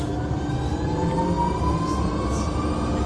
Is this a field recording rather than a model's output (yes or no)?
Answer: yes